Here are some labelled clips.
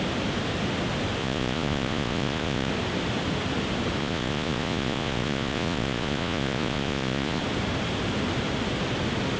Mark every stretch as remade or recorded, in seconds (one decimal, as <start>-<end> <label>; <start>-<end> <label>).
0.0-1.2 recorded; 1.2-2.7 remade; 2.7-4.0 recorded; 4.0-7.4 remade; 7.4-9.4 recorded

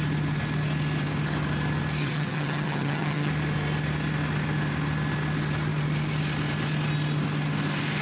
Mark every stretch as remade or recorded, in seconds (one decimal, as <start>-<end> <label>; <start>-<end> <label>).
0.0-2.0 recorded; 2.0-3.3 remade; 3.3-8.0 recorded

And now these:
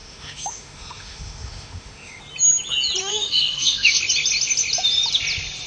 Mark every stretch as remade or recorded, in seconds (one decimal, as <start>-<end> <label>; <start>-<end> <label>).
0.0-2.2 remade; 2.2-3.0 recorded; 3.0-4.0 remade; 4.0-5.7 recorded

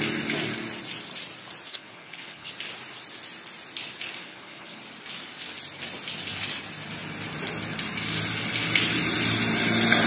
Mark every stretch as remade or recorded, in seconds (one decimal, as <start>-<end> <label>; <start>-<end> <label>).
0.0-1.7 recorded; 1.7-2.5 remade; 2.5-4.2 recorded; 4.2-4.8 remade; 4.8-10.1 recorded